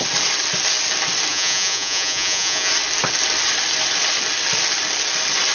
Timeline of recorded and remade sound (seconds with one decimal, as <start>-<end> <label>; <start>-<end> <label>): 0.0-1.3 recorded; 1.3-2.7 remade; 2.7-5.5 recorded